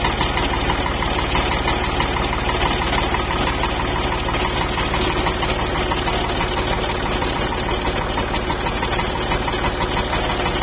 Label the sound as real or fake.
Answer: real